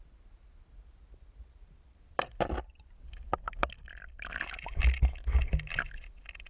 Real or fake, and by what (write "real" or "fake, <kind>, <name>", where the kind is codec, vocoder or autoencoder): real